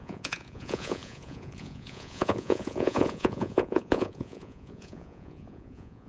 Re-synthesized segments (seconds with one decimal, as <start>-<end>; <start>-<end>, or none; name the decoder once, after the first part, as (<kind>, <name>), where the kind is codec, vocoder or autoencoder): 0.0-6.1 (vocoder, Vocos)